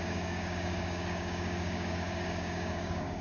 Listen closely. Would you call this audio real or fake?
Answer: fake